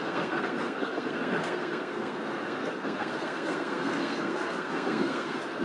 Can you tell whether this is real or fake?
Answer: fake